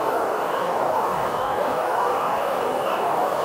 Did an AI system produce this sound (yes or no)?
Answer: yes